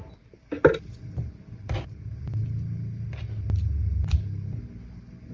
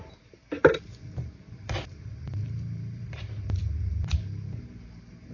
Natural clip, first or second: first